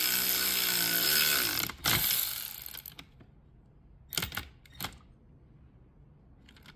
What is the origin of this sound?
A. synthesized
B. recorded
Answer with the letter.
B